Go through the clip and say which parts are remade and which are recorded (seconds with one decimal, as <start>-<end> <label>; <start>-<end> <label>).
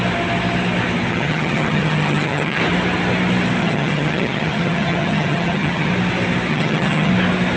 0.0-1.1 recorded; 1.1-2.6 remade; 2.6-3.6 recorded; 3.6-5.9 remade; 5.9-6.5 recorded; 6.5-7.1 remade; 7.1-7.6 recorded